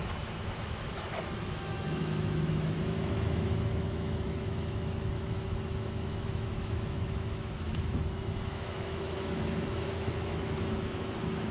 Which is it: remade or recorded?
remade